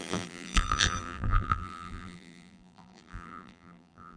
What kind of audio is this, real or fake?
fake